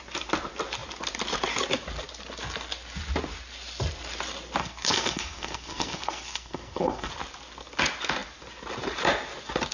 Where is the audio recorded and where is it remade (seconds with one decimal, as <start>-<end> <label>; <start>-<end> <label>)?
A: 0.0-4.6 recorded; 4.6-7.1 remade; 7.1-9.7 recorded